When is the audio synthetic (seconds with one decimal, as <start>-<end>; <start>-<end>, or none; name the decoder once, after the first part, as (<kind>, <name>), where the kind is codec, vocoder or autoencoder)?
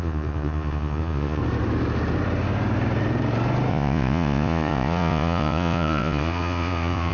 0.0-1.4 (vocoder, Vocos); 3.7-7.1